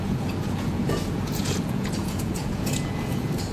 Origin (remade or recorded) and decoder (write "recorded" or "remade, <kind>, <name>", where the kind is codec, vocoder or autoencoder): remade, vocoder, Vocos